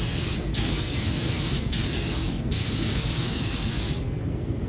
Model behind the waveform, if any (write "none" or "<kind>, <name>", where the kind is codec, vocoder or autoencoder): codec, SNAC